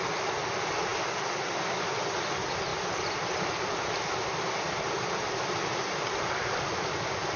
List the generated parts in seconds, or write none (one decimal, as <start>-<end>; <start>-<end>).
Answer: 2.7-7.0